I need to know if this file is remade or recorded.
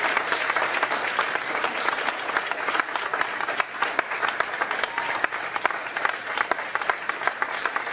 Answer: remade